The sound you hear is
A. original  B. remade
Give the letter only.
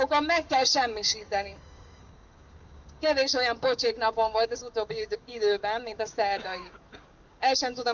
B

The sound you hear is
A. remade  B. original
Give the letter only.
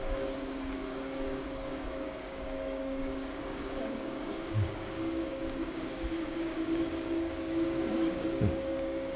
A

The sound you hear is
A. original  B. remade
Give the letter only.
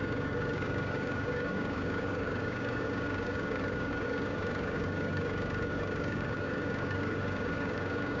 B